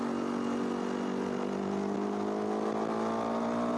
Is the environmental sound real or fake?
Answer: real